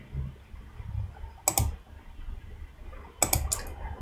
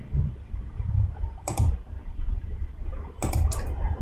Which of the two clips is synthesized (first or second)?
second